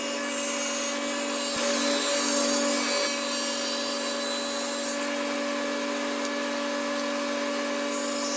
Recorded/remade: recorded